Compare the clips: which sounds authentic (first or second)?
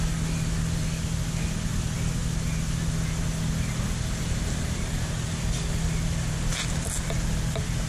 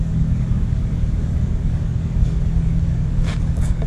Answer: first